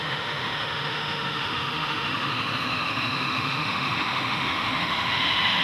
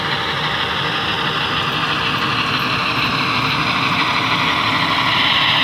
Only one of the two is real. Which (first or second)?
second